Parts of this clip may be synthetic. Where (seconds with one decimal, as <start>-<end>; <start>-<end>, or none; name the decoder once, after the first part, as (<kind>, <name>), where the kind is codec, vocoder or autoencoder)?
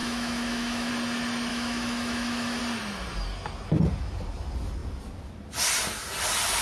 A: 0.0-0.9 (autoencoder, DAC-VAE); 1.5-2.6